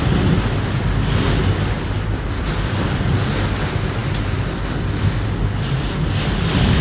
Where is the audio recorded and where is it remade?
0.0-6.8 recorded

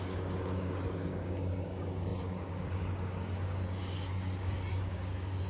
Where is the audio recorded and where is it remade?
0.0-5.5 remade

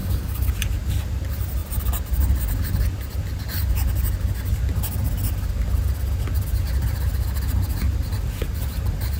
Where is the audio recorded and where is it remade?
0.0-0.5 remade; 0.5-9.2 recorded

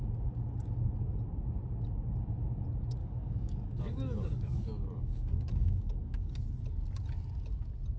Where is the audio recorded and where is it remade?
0.0-3.0 recorded; 3.0-6.3 remade; 6.3-8.0 recorded

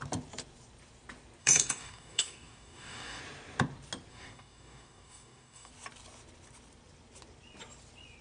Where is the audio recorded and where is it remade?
0.0-1.4 recorded; 1.4-3.2 remade; 3.2-4.1 recorded; 4.1-5.7 remade; 5.7-8.2 recorded

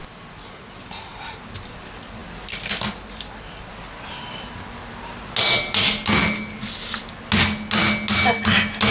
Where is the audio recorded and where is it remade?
0.0-6.2 recorded; 6.2-7.0 remade; 7.0-8.9 recorded

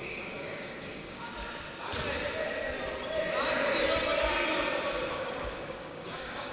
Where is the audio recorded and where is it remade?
0.0-1.3 remade; 1.3-5.1 recorded; 5.1-6.5 remade

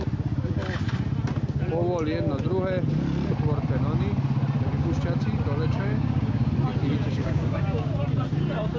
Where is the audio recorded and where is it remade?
0.0-5.7 recorded; 5.7-6.5 remade; 6.5-7.0 recorded; 7.0-7.9 remade; 7.9-8.8 recorded